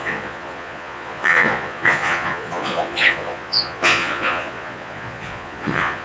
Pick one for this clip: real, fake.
fake